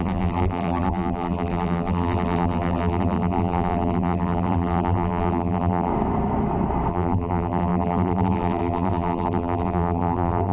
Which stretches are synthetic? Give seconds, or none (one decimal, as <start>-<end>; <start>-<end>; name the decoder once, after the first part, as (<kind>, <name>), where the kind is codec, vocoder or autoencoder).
0.0-5.9 (vocoder, BigVGAN v2); 6.9-10.5